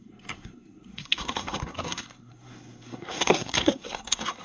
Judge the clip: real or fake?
fake